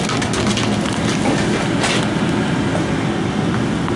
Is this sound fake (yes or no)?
no